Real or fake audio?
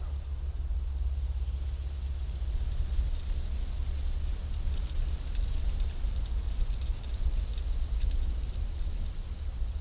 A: real